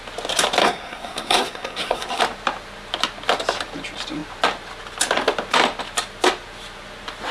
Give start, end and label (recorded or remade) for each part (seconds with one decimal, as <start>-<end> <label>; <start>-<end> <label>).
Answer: 0.0-0.6 recorded; 0.6-2.2 remade; 2.2-7.3 recorded